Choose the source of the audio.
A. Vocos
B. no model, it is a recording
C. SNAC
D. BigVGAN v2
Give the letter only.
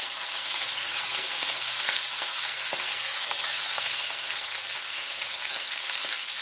C